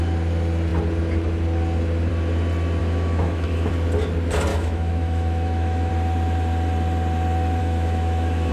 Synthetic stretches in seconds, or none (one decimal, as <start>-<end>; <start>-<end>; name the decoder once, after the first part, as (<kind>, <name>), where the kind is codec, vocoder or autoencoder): 2.8-3.7 (autoencoder, DAC-VAE); 4.5-5.9; 7.6-8.5